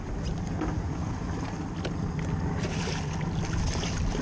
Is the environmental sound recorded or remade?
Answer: recorded